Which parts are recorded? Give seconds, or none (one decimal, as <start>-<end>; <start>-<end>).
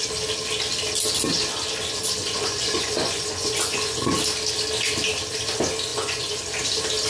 0.0-2.2; 4.1-5.9; 6.4-7.1